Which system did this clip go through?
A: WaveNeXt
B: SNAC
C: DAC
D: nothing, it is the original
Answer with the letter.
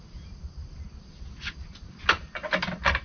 D